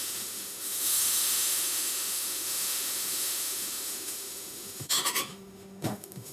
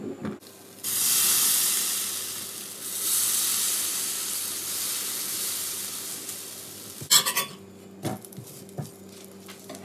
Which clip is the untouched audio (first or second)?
second